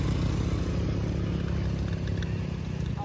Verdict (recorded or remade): recorded